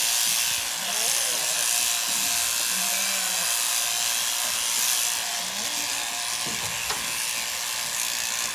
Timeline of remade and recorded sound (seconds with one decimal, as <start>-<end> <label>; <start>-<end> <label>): 0.0-8.5 recorded